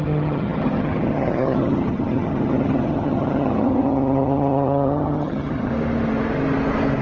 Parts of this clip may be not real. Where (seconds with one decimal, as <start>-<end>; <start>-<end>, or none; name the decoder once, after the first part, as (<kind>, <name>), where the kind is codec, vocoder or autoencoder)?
0.0-5.7 (vocoder, HiFi-GAN)